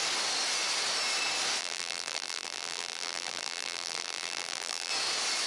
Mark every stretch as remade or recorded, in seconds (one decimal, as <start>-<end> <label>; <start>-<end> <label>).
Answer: 0.0-1.6 recorded; 1.6-4.9 remade; 4.9-5.5 recorded